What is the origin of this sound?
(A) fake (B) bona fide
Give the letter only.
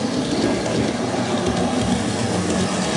B